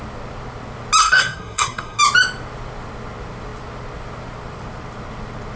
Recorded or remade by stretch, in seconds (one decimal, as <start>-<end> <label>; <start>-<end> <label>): 0.0-1.0 recorded; 1.0-2.0 remade; 2.0-5.6 recorded